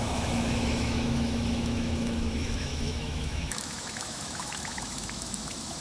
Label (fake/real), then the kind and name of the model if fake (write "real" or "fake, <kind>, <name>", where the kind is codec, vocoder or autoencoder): fake, autoencoder, DAC-VAE